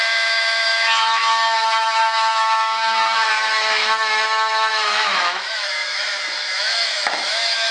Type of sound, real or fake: fake